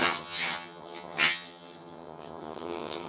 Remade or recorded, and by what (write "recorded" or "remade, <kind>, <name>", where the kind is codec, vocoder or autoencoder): remade, vocoder, HiFi-GAN